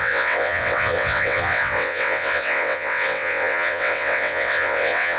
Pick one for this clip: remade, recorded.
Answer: remade